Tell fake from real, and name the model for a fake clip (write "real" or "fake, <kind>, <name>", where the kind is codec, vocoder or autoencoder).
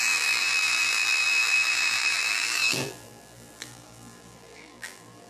fake, vocoder, BigVGAN v2